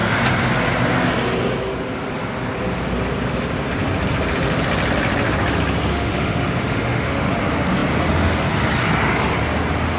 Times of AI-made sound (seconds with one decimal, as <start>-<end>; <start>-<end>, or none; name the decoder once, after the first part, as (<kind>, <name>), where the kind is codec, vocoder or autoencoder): 5.9-7.3 (autoencoder, DAC-VAE)